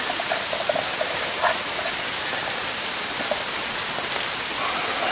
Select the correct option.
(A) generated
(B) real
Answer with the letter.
B